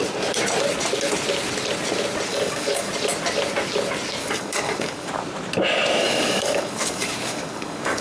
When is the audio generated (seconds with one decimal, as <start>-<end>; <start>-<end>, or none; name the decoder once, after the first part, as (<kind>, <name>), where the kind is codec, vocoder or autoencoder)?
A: 2.3-2.9 (codec, DAC); 4.2-5.1; 6.0-8.0